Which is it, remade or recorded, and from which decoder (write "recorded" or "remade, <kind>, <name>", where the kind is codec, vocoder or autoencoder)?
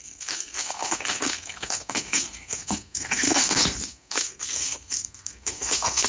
remade, codec, SNAC